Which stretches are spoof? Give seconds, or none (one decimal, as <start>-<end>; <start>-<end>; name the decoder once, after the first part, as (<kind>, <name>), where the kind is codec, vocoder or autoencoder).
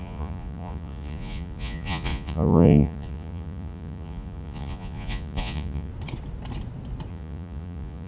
0.0-5.9 (vocoder, Vocos); 7.1-8.1